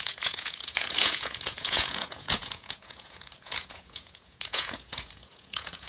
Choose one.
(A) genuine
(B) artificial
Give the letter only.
B